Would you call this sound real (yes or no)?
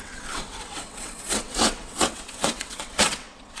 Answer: no